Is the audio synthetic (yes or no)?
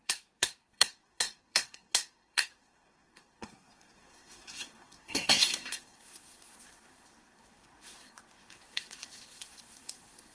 yes